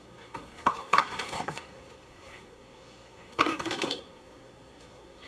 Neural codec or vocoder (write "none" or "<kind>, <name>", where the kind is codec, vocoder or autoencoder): codec, SNAC